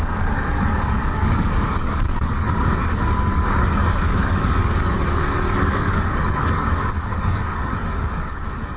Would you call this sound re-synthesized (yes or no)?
yes